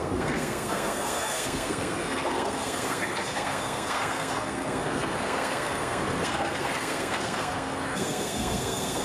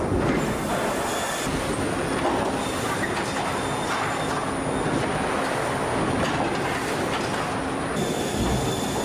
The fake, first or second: first